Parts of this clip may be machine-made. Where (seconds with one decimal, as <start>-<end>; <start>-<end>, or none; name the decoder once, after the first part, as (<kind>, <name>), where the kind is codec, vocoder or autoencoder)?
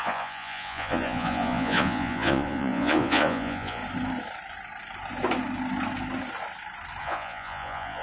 0.0-3.8 (vocoder, Vocos); 7.0-8.0